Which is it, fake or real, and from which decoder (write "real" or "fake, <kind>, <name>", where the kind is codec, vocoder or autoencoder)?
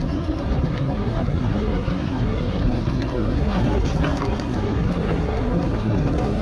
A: fake, codec, SNAC